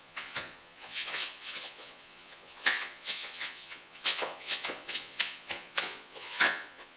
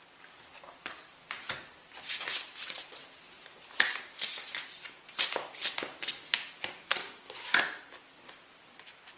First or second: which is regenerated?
first